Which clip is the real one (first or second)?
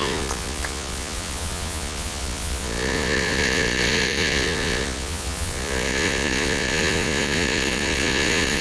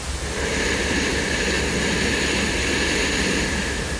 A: second